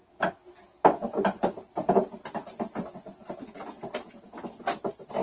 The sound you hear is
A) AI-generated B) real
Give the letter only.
B